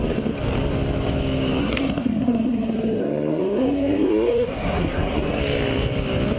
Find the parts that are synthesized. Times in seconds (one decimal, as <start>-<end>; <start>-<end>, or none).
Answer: 1.6-5.4